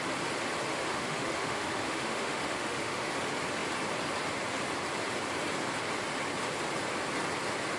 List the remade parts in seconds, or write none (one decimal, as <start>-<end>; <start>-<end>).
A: 0.7-3.1